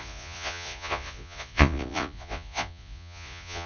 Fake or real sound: fake